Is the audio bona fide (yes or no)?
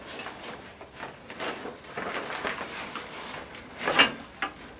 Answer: yes